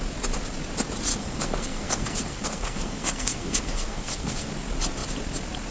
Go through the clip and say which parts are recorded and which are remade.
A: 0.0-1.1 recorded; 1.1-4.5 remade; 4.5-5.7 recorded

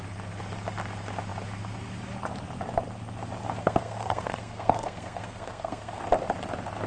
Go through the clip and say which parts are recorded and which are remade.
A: 0.0-3.6 recorded; 3.6-6.0 remade; 6.0-6.9 recorded

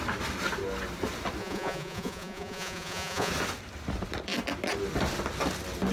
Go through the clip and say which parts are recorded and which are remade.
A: 0.0-1.4 recorded; 1.4-3.3 remade; 3.3-5.9 recorded

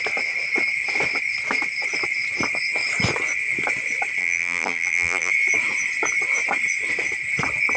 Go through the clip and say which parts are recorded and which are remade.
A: 0.0-4.2 recorded; 4.2-5.3 remade; 5.3-7.8 recorded

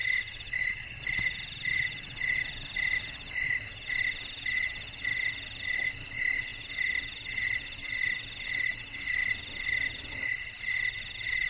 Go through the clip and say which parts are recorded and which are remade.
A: 0.0-5.1 recorded; 5.1-5.9 remade; 5.9-9.2 recorded; 9.2-10.6 remade; 10.6-11.5 recorded

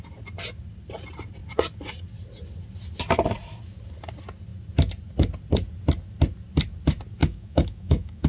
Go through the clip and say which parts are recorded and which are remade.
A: 0.0-7.2 recorded; 7.2-8.3 remade

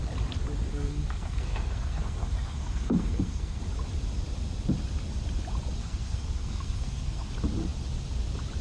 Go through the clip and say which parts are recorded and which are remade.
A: 0.0-0.7 recorded; 0.7-3.6 remade; 3.6-5.8 recorded; 5.8-7.3 remade; 7.3-8.6 recorded

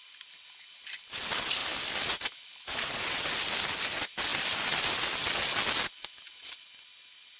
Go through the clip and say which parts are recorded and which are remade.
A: 0.0-7.4 recorded